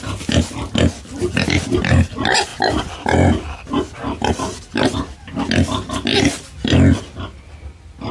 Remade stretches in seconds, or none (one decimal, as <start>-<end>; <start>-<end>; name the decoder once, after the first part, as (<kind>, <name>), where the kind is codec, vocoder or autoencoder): none

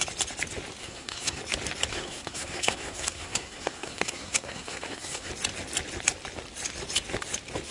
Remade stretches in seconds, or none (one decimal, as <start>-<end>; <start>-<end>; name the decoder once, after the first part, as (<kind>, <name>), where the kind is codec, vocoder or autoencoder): 0.8-1.4 (codec, SNAC); 1.9-5.3

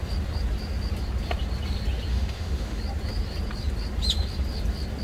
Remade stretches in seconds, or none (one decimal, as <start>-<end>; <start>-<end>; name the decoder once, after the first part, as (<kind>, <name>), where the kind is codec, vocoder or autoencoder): 2.1-2.8 (autoencoder, DAC-VAE)